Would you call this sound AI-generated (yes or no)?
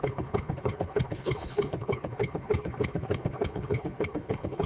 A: yes